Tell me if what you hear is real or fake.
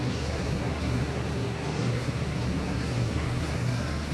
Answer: fake